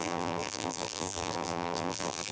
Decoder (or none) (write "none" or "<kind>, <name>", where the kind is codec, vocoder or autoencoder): vocoder, BigVGAN v2